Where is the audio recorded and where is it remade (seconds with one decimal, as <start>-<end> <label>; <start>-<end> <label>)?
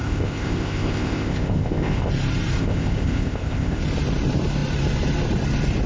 0.0-2.1 remade; 2.1-2.6 recorded; 2.6-3.8 remade; 3.8-5.9 recorded